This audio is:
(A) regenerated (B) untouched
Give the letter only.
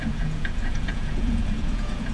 A